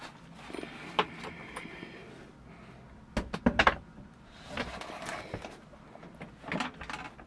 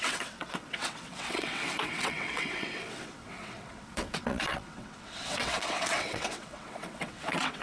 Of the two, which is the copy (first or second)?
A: second